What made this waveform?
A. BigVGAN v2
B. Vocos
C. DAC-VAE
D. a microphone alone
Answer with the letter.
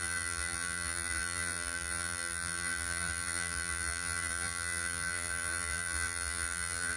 A